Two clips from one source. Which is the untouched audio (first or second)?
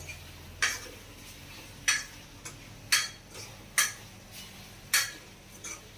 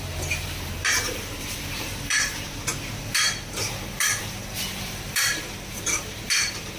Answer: first